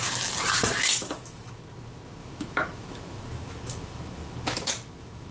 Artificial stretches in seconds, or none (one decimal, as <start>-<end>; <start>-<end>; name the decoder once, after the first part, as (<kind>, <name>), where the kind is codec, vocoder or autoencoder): 0.9-1.6 (autoencoder, DAC-VAE); 2.2-5.3